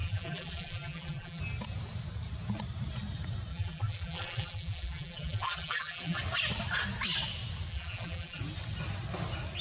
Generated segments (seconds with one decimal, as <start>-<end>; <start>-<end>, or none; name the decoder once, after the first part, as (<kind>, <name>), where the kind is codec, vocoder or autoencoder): 0.0-1.4 (vocoder, BigVGAN v2); 3.5-6.2; 7.7-8.4